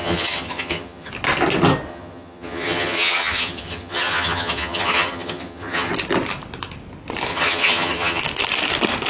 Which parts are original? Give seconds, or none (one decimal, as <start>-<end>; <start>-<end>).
1.1-1.9; 5.9-7.3; 8.2-9.1